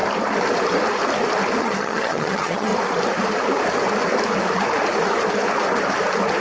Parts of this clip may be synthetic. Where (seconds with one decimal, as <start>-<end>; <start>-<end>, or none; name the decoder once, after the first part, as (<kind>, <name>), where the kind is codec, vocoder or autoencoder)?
1.6-2.7 (vocoder, HiFi-GAN)